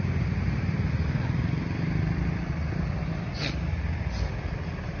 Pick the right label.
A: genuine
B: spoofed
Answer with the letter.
A